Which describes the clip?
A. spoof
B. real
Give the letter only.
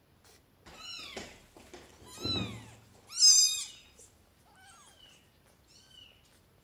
B